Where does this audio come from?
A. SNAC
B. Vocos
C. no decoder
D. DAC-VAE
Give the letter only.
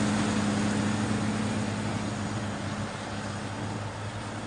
C